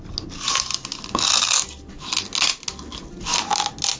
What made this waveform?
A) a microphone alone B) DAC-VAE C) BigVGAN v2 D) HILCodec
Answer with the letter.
A